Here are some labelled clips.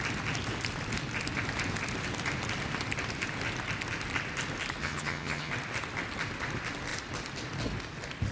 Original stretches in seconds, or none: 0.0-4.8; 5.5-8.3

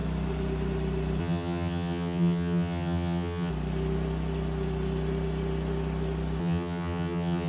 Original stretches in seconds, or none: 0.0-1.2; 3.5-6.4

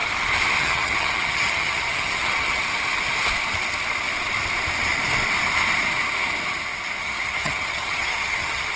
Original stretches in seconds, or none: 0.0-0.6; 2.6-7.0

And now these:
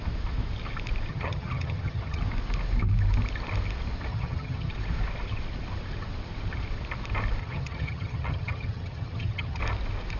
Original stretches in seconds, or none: 0.0-1.1; 2.2-4.1; 4.7-7.4; 9.6-10.2

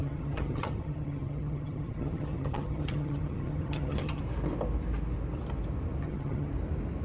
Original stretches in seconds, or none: 4.2-6.0; 6.5-7.0

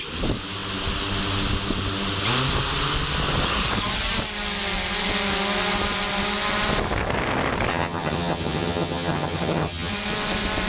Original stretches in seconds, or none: 0.0-7.7; 9.9-10.7

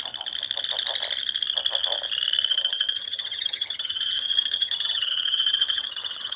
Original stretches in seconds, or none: 0.0-2.5

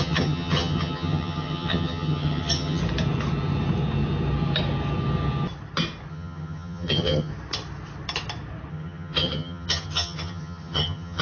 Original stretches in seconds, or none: 2.8-6.1; 7.3-8.7